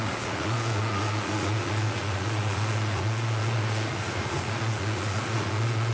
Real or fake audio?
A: fake